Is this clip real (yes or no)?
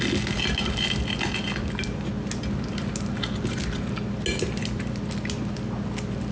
yes